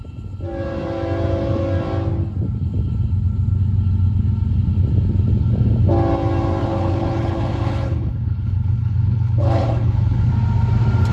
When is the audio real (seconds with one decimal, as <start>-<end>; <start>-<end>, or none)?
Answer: 0.0-6.6; 10.3-11.1